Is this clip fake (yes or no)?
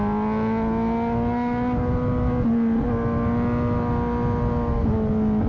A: no